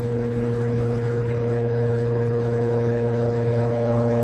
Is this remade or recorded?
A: remade